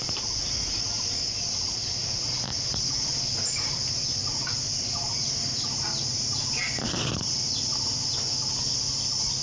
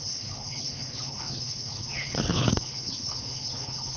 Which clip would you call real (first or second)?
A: first